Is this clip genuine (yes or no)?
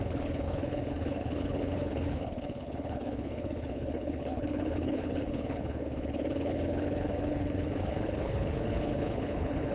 no